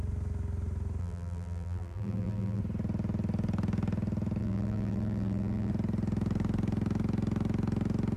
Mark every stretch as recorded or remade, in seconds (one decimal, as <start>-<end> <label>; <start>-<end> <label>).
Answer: 0.0-1.0 recorded; 1.0-2.6 remade; 2.6-4.4 recorded; 4.4-5.7 remade; 5.7-8.2 recorded